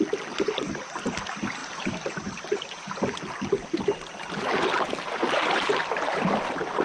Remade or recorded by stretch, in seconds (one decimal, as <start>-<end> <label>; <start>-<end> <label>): 0.0-6.8 recorded